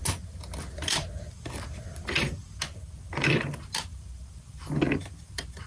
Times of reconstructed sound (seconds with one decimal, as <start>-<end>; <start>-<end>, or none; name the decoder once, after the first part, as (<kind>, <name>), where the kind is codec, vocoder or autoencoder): none